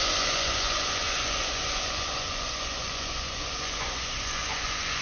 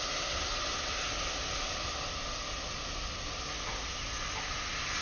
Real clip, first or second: second